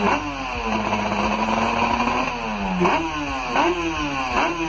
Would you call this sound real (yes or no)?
yes